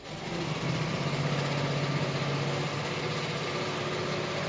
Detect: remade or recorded recorded